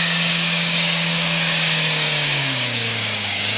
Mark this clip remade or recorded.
remade